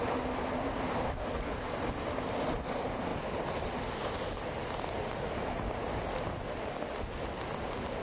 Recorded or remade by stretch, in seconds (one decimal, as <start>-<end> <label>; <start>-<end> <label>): 0.0-8.0 recorded